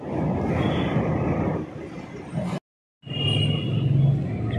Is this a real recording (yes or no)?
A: yes